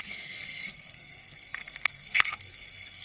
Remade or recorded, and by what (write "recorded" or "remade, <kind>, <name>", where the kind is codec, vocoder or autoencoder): remade, codec, SNAC